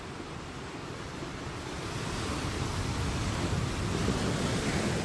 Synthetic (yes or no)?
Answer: no